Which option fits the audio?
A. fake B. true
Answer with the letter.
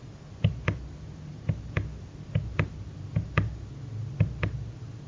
B